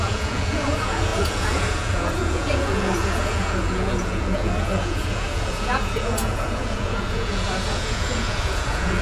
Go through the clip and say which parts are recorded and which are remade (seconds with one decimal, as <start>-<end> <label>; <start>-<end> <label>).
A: 0.0-9.0 remade